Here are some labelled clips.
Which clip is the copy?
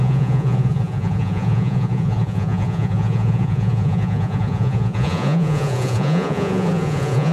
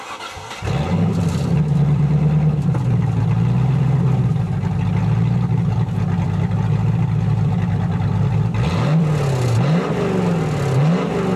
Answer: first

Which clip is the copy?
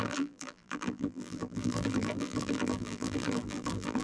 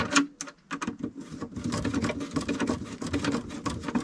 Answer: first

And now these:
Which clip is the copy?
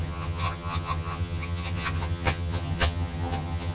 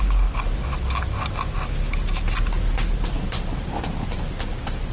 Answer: first